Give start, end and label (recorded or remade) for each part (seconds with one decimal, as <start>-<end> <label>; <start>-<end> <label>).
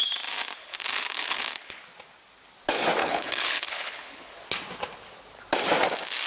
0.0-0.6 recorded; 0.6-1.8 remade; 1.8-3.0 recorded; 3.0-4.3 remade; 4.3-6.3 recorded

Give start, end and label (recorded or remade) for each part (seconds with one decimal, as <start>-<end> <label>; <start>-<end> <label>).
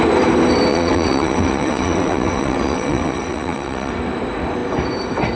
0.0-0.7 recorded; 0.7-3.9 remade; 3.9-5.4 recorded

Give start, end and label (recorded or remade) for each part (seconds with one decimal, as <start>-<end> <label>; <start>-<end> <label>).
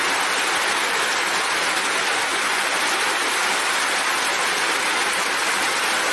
0.0-2.3 recorded; 2.3-2.8 remade; 2.8-6.1 recorded